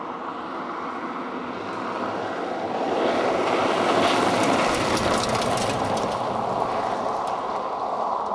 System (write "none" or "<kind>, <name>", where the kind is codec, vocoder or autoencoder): none